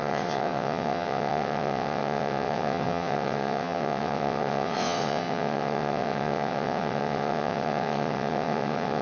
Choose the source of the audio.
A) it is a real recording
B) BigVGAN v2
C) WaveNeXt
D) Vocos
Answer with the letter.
C